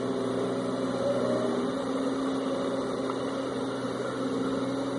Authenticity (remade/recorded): recorded